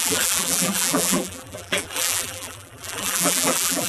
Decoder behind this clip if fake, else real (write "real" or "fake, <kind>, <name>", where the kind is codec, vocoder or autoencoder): fake, vocoder, BigVGAN v2